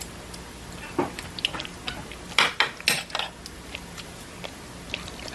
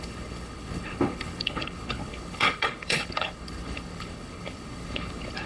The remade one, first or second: second